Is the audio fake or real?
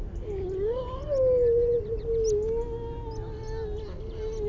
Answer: real